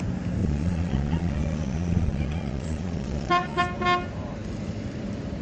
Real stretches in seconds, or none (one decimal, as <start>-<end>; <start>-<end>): 0.0-0.4; 3.6-5.4